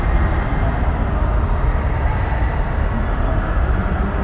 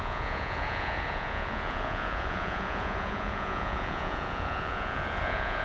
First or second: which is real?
first